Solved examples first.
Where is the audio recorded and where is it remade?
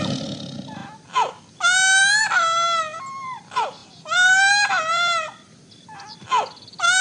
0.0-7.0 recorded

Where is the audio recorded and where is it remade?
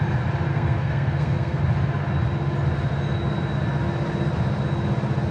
0.0-0.5 recorded; 0.5-1.6 remade; 1.6-5.3 recorded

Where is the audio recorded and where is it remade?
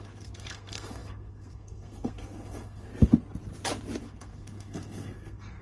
0.0-2.9 remade; 2.9-4.0 recorded; 4.0-5.6 remade